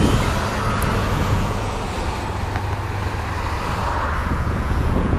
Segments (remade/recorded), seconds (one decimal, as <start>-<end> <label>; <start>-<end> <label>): 0.0-1.0 recorded; 1.0-1.7 remade; 1.7-4.2 recorded; 4.2-5.2 remade